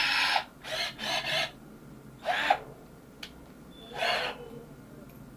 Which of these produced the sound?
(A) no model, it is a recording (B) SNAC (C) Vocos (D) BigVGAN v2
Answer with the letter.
A